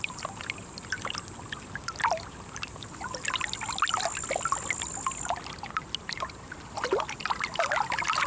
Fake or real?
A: real